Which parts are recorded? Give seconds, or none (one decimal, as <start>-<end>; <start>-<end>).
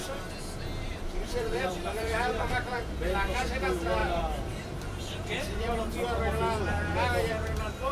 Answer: 0.0-0.9; 3.6-4.0; 5.7-7.9